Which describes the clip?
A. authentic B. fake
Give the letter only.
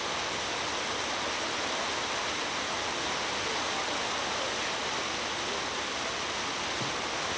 A